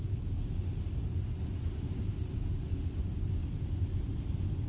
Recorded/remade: recorded